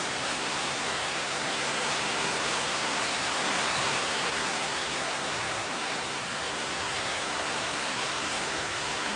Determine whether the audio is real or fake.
fake